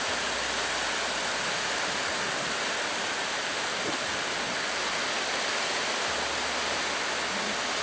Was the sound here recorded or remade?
recorded